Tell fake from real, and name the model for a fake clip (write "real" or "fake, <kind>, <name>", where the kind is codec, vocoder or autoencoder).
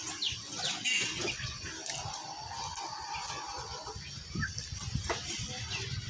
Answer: real